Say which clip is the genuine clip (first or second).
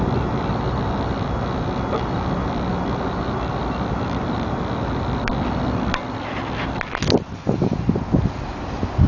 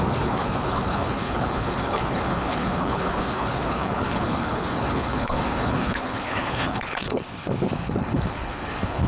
first